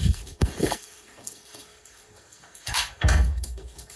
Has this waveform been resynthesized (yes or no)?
yes